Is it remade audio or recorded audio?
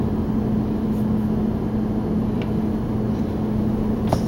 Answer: recorded